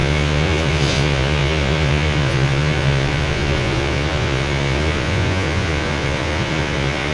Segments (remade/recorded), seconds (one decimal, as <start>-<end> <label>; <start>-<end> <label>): 0.0-7.1 remade